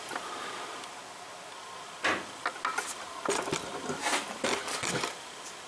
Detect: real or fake real